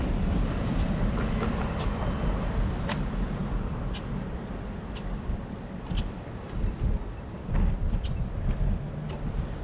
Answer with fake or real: real